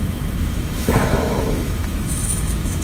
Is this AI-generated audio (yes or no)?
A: yes